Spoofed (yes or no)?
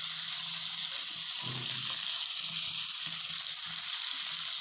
no